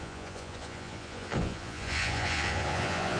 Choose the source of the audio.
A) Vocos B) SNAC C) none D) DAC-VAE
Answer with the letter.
A